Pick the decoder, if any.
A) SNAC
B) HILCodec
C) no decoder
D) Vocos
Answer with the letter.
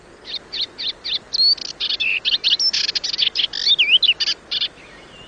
C